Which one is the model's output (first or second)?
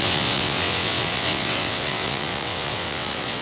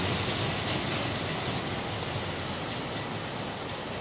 first